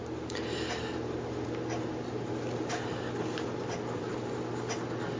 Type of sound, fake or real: real